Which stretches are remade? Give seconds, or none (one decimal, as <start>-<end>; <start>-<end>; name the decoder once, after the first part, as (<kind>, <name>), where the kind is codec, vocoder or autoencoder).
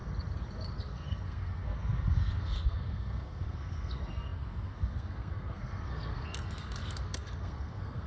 0.8-8.1 (codec, SNAC)